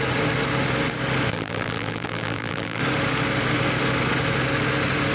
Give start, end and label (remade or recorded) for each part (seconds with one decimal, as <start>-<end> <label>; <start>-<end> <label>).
0.0-1.3 recorded; 1.3-2.8 remade; 2.8-5.1 recorded